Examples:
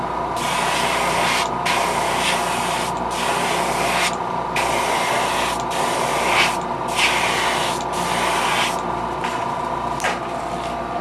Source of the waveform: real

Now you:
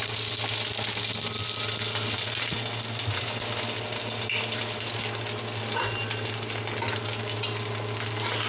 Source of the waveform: real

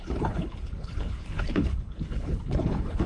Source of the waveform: fake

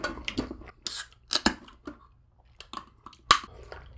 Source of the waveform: real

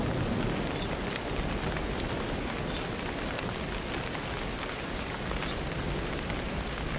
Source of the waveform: real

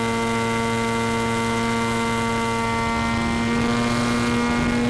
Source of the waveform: real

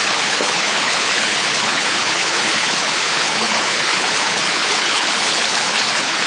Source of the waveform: fake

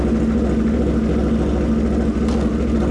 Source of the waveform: real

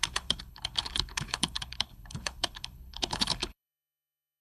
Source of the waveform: fake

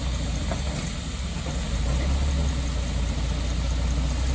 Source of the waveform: real